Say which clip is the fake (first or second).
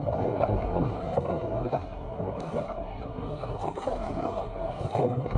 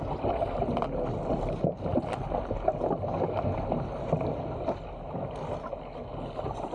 first